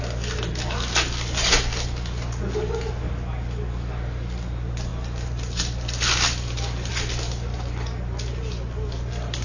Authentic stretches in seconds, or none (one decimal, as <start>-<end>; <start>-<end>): 0.0-9.4